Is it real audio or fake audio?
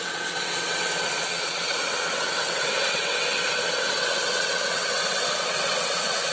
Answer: fake